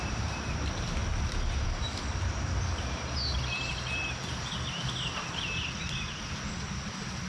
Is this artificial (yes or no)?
no